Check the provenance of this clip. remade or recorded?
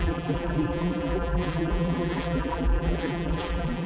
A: remade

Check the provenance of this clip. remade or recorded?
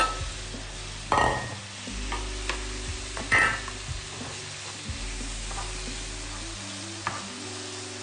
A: recorded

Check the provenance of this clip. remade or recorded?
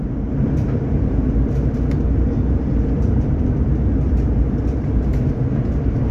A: remade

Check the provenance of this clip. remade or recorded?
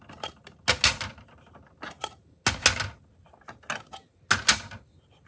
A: recorded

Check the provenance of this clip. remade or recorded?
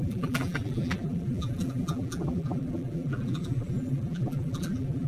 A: remade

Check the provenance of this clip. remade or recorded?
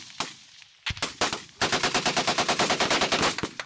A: recorded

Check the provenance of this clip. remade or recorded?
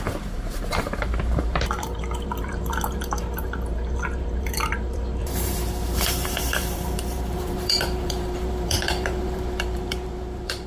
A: remade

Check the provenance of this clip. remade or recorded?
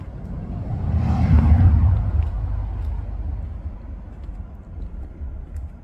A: recorded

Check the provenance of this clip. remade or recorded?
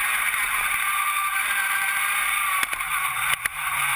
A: remade